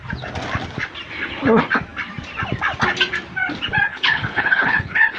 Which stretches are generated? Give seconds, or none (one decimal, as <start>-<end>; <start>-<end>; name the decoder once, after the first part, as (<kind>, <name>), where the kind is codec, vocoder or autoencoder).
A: 3.9-5.2 (codec, HILCodec)